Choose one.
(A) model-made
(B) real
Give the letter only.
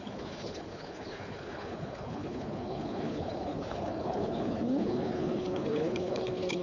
A